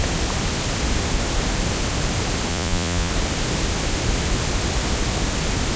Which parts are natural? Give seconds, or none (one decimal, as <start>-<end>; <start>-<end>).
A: 0.0-2.5; 3.1-5.8